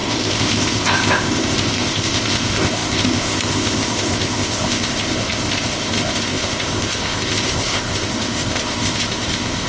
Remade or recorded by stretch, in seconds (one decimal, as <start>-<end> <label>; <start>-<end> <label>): 0.0-9.7 remade